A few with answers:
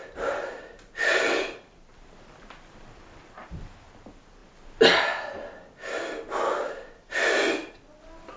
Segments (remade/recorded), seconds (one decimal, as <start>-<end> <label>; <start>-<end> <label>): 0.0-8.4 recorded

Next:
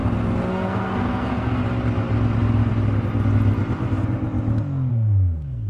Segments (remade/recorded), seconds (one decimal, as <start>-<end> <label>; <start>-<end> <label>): 0.0-0.5 recorded; 0.5-1.6 remade; 1.6-4.9 recorded; 4.9-5.7 remade

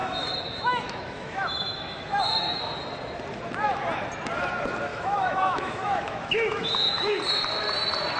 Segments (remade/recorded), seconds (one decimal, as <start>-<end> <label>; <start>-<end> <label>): 0.0-2.6 remade; 2.6-4.9 recorded; 4.9-7.2 remade; 7.2-8.2 recorded

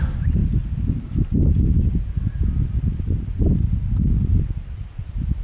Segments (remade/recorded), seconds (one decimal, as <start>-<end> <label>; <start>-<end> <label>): 0.0-5.4 recorded